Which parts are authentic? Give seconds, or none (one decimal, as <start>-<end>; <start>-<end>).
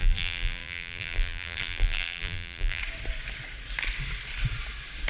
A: 2.8-5.1